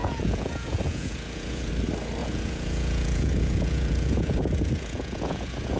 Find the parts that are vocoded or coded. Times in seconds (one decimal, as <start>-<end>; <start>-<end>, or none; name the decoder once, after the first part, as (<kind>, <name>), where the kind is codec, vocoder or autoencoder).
0.0-1.7 (vocoder, Vocos); 2.2-5.8